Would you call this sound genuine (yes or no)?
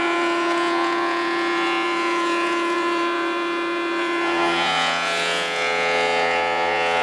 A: no